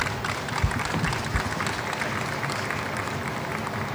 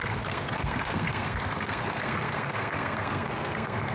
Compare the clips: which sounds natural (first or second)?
first